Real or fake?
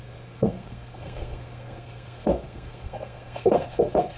fake